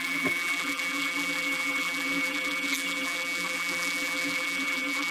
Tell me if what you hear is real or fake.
fake